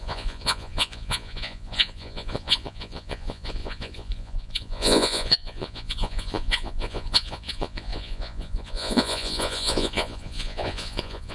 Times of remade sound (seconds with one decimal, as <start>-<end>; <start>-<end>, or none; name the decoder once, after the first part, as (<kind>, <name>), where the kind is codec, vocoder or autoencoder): 0.0-11.3 (vocoder, Vocos)